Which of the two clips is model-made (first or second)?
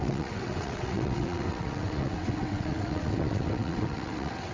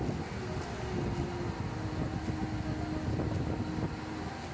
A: first